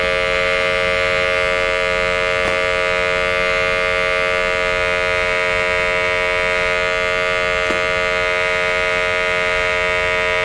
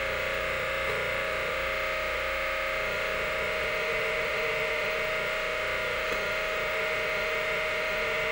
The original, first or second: first